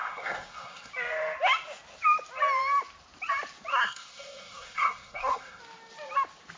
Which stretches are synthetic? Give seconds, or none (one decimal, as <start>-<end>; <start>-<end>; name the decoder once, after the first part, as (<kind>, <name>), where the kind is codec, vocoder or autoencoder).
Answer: 0.0-0.9 (codec, SNAC); 3.7-5.6